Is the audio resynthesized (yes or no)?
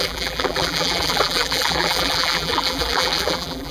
yes